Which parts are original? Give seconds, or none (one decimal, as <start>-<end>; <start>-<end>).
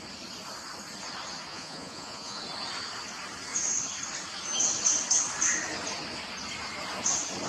0.0-1.5; 2.4-7.5